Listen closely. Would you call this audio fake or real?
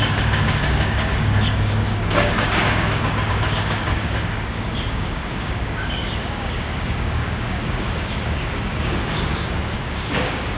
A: fake